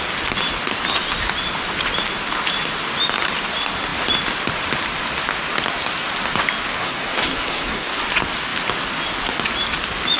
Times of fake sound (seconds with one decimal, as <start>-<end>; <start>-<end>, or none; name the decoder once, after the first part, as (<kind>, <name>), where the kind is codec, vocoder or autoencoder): 6.8-7.9 (codec, SNAC)